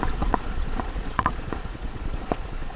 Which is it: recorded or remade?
remade